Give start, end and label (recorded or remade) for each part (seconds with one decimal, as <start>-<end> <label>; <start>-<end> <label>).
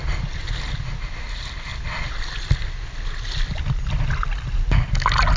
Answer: 0.0-5.4 recorded